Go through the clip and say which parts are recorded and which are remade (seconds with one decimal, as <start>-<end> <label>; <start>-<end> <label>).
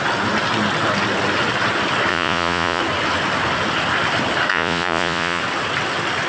0.0-2.1 recorded; 2.1-2.8 remade; 2.8-4.5 recorded; 4.5-5.4 remade; 5.4-6.3 recorded